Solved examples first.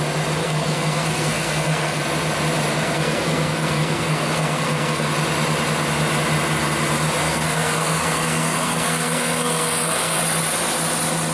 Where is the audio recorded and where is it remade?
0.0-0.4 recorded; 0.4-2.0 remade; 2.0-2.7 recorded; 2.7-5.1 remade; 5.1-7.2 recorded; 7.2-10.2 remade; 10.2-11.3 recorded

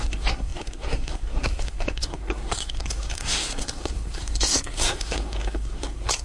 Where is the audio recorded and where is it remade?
0.0-6.2 remade

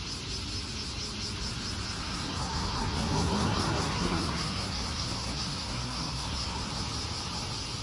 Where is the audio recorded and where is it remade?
0.0-2.0 recorded; 2.0-6.7 remade; 6.7-7.8 recorded

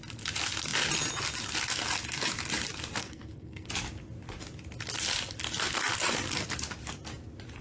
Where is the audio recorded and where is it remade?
0.0-3.0 recorded; 3.0-3.7 remade; 3.7-7.6 recorded

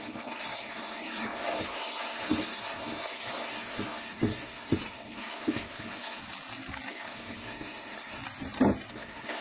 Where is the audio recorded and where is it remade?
0.0-6.2 remade; 6.2-6.9 recorded; 6.9-8.2 remade; 8.2-8.9 recorded; 8.9-9.4 remade